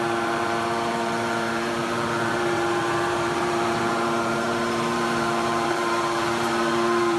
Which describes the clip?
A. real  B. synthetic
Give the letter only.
B